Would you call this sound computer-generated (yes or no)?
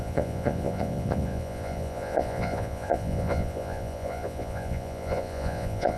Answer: yes